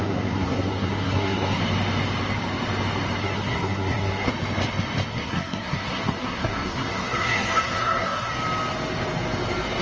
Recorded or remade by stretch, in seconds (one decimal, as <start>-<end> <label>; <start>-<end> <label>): 0.0-1.6 remade; 1.6-3.2 recorded; 3.2-4.3 remade; 4.3-5.1 recorded; 5.1-8.3 remade; 8.3-9.8 recorded